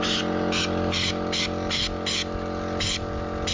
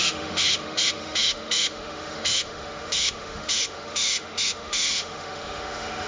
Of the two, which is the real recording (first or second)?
first